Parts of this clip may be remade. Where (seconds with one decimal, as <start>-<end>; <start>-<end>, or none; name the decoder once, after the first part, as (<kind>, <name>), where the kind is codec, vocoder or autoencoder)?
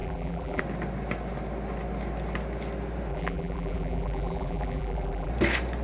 0.0-0.6 (vocoder, BigVGAN v2); 3.1-5.3